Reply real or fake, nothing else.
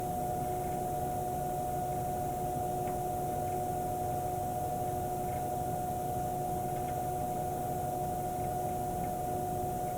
real